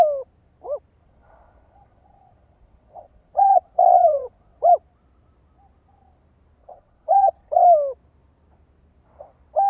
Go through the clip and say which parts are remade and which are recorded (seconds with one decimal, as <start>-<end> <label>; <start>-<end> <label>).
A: 0.0-1.0 recorded; 1.0-4.7 remade; 4.7-6.6 recorded; 6.6-7.6 remade; 7.6-9.7 recorded